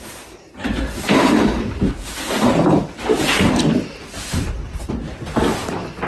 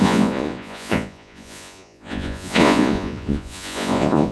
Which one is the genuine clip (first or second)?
first